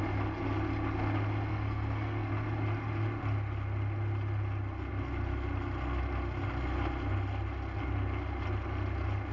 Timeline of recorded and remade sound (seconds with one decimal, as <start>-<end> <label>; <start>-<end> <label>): 0.0-1.5 recorded; 1.5-2.3 remade; 2.3-9.3 recorded